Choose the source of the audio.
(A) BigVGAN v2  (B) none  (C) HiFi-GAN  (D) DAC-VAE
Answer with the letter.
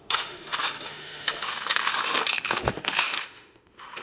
D